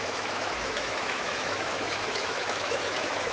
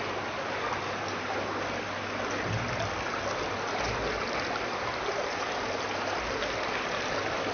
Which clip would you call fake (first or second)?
first